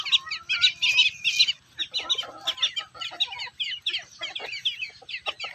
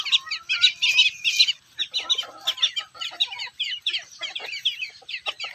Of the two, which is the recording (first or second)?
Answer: first